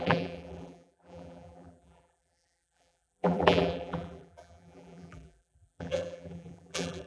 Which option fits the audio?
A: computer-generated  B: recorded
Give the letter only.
A